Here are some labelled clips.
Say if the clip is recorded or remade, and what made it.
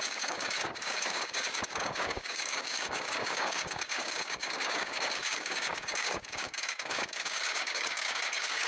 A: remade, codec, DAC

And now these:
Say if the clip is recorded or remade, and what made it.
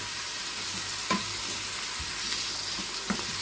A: recorded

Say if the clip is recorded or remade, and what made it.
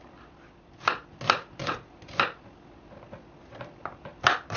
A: recorded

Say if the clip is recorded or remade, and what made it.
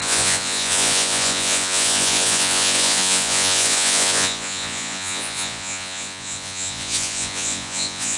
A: remade, vocoder, Vocos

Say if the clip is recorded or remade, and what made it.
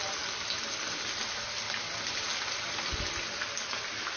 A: recorded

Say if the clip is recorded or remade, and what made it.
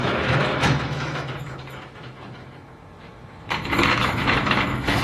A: remade, autoencoder, DAC-VAE